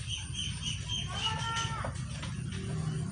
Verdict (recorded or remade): recorded